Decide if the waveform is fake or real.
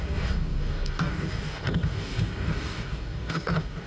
fake